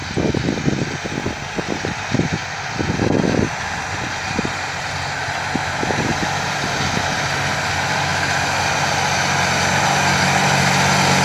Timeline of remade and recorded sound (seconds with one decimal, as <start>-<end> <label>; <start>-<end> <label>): 0.0-2.4 recorded; 2.4-5.4 remade; 5.4-11.2 recorded